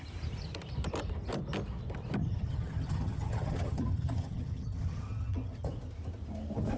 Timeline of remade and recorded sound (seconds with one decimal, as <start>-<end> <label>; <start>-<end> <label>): 0.0-2.2 recorded; 2.2-5.7 remade; 5.7-6.8 recorded